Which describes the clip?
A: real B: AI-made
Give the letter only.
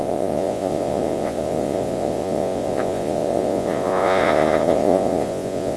B